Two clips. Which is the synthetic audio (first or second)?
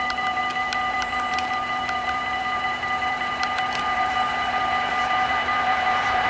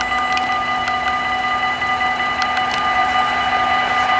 first